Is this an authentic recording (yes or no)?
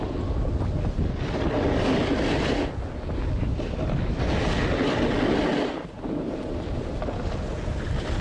yes